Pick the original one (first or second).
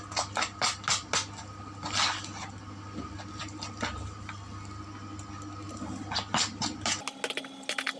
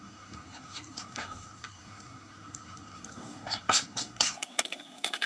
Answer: first